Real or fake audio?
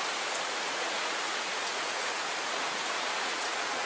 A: fake